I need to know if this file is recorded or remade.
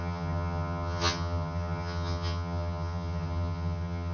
remade